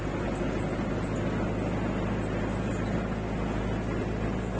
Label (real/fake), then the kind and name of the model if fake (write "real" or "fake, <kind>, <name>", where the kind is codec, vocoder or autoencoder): real